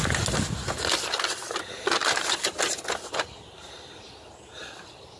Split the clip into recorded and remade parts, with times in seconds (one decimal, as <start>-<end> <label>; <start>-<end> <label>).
0.0-2.0 recorded; 2.0-5.2 remade